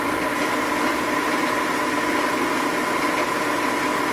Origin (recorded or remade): recorded